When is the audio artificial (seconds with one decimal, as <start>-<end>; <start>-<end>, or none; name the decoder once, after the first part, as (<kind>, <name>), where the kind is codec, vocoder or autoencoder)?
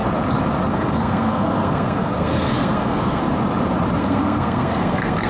0.7-3.2 (codec, SNAC); 4.0-5.3